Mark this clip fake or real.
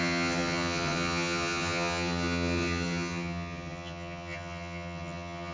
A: fake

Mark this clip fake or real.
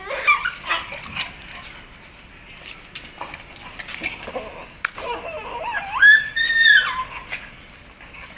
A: real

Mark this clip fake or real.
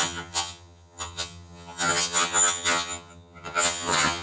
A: fake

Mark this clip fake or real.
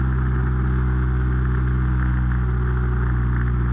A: real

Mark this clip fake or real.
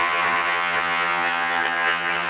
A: fake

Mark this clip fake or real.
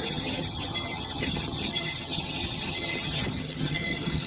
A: fake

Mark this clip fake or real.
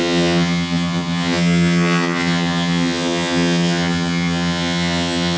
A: fake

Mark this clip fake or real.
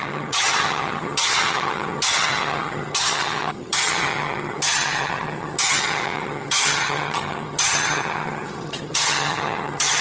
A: fake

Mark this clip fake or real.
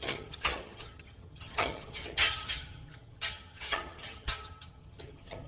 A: fake